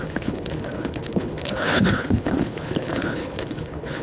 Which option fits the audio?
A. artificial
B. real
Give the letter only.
A